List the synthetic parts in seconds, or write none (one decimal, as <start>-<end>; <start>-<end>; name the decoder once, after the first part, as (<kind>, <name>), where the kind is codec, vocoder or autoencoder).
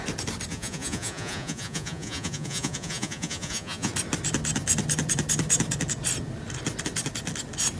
0.5-3.9 (vocoder, Vocos)